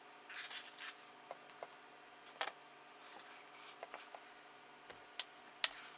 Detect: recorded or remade recorded